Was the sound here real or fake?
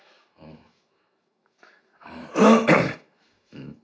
fake